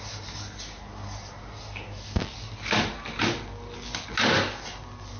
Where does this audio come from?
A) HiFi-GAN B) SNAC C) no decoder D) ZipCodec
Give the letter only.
C